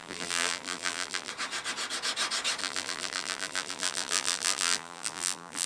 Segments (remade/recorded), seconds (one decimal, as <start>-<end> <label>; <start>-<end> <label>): 0.0-1.3 remade; 1.3-2.6 recorded; 2.6-5.7 remade